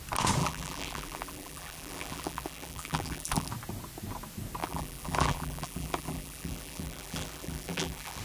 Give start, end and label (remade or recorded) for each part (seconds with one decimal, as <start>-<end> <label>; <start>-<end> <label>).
0.0-0.4 recorded; 0.4-3.5 remade; 3.5-4.6 recorded; 4.6-8.2 remade